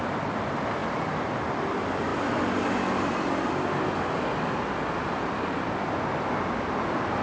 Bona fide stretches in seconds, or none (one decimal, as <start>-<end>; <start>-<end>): 0.0-7.2